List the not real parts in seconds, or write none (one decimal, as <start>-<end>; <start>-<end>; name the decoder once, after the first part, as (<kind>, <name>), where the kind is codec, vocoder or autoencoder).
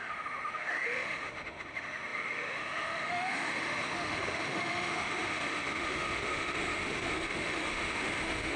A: 0.0-8.6 (autoencoder, DAC-VAE)